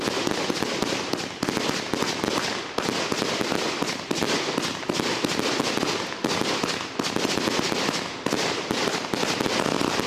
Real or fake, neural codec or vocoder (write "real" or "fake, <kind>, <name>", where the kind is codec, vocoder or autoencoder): real